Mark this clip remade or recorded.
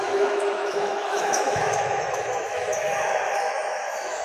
remade